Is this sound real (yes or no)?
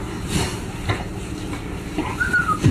yes